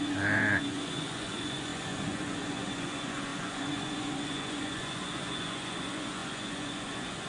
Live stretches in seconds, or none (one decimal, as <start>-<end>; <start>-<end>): none

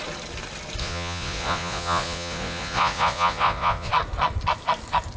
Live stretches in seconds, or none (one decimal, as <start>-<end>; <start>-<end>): 0.0-0.8; 3.9-5.2

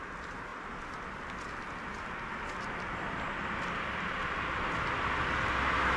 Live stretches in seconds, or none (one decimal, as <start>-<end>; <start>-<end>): 0.0-6.0

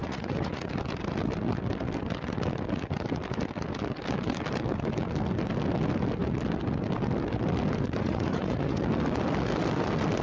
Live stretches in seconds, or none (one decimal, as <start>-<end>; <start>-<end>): 0.7-8.0; 8.8-10.2